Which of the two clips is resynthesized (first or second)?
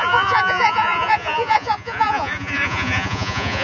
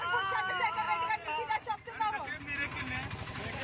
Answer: first